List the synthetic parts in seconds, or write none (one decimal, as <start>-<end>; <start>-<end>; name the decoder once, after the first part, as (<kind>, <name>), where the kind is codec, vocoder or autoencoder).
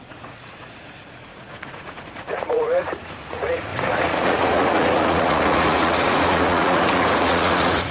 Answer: 0.0-7.9 (vocoder, Vocos)